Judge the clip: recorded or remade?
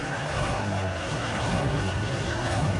remade